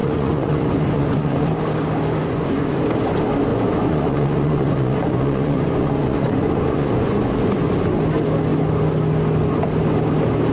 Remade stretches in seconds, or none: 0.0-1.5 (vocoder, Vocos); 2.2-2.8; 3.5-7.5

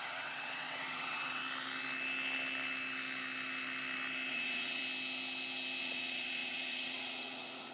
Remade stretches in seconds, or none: 0.0-1.4 (vocoder, WaveNeXt); 4.3-4.8; 5.8-7.7